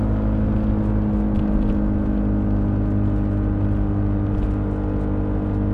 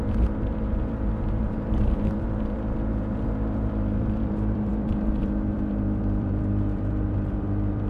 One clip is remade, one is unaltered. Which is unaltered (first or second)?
first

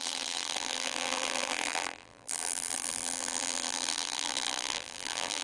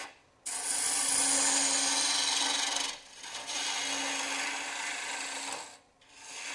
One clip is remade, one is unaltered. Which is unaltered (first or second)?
second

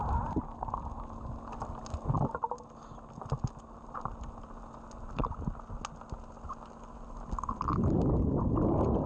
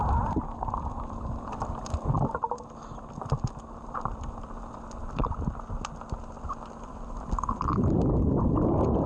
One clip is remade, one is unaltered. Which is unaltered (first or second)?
first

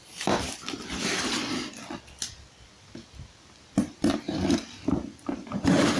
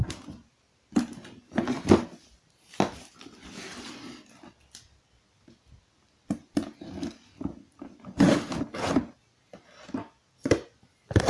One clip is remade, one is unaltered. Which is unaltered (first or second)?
second